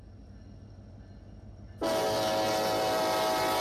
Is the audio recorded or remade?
recorded